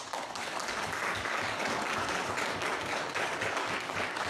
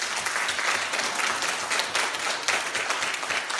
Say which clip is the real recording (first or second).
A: second